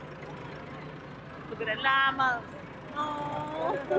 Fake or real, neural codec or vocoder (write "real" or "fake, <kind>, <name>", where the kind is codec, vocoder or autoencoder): real